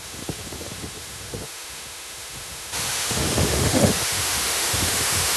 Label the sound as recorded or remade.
remade